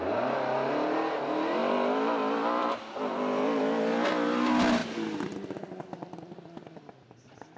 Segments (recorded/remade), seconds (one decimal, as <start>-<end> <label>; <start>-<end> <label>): 0.0-1.6 recorded; 1.6-3.6 remade; 3.6-7.6 recorded